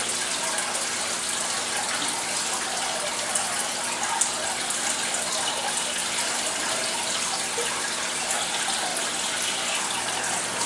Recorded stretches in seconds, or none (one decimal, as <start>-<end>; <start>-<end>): 0.0-10.7